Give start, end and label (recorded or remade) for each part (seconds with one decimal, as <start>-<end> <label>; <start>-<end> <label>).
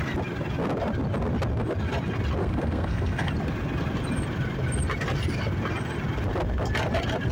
0.0-2.4 recorded; 2.4-3.3 remade; 3.3-7.3 recorded